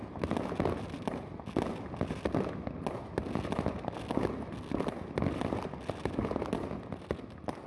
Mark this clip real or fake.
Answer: real